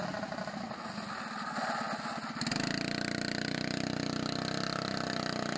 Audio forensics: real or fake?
real